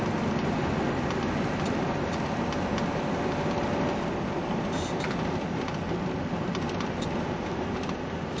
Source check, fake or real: real